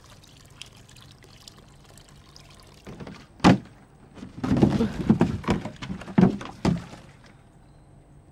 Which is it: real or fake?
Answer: real